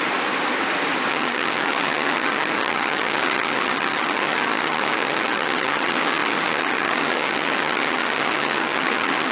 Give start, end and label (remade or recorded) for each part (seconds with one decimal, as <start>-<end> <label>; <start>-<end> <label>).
0.0-1.1 recorded; 1.1-9.3 remade